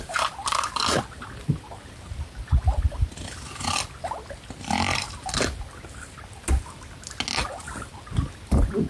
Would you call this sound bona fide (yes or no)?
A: yes